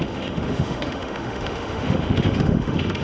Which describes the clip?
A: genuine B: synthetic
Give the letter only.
B